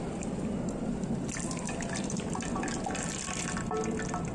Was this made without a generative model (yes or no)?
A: no